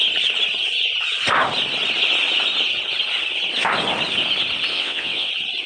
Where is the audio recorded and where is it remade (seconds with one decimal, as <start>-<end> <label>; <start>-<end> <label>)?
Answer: 0.0-4.7 recorded; 4.7-5.3 remade; 5.3-5.7 recorded